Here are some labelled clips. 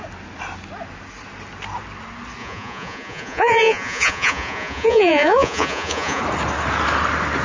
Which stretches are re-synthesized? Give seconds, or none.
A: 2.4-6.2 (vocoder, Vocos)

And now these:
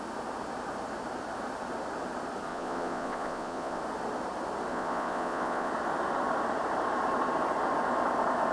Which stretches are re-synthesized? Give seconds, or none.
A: 2.5-3.8 (vocoder, Vocos); 4.7-5.7

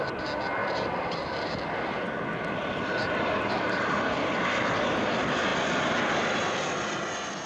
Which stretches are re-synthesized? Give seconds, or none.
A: none

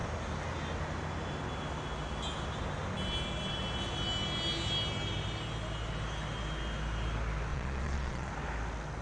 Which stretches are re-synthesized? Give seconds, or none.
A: 7.5-8.3 (vocoder, Vocos)

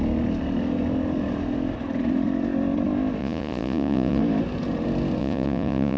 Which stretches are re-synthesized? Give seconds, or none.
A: 3.2-4.2 (vocoder, Vocos); 5.2-6.0